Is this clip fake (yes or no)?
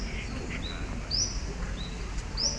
no